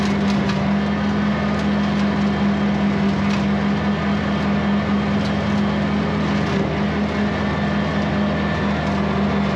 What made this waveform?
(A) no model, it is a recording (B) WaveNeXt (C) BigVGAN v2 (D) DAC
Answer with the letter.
A